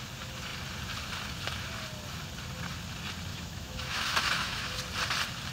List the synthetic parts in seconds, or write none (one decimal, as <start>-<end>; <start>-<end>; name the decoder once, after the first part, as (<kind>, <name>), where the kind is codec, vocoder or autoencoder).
3.3-4.7 (autoencoder, DAC-VAE)